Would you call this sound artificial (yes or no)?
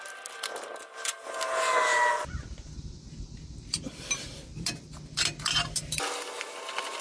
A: no